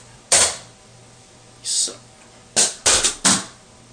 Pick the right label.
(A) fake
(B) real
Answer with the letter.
B